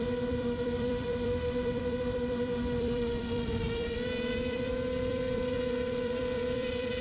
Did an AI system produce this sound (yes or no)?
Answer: yes